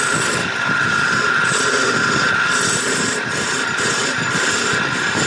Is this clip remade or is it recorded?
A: recorded